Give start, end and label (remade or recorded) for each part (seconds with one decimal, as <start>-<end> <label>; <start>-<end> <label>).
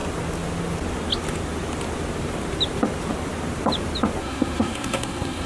0.0-4.2 recorded; 4.2-5.5 remade